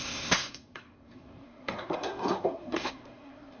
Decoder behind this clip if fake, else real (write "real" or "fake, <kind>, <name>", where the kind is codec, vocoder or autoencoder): fake, codec, SNAC